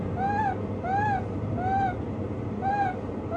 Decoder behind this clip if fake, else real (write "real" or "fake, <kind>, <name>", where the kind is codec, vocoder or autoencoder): real